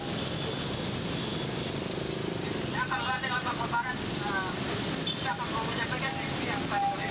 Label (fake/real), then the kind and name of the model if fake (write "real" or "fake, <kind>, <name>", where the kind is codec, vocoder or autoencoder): real